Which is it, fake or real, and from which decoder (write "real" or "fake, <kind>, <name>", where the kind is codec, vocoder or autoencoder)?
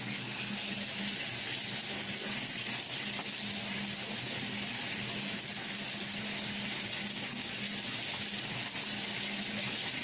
real